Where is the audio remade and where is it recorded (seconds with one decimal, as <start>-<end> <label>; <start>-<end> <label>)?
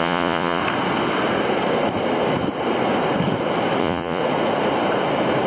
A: 0.0-0.6 remade; 0.6-3.8 recorded; 3.8-4.2 remade; 4.2-5.5 recorded